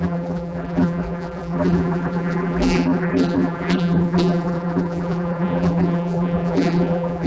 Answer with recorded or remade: remade